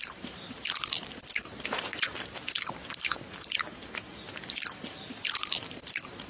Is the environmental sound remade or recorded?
remade